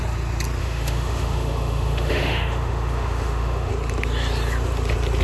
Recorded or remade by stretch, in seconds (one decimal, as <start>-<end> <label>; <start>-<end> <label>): 0.0-0.6 recorded; 0.6-3.7 remade; 3.7-5.2 recorded